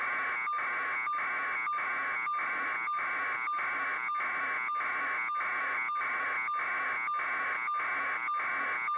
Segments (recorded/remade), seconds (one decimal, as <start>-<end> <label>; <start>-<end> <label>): 0.0-9.0 recorded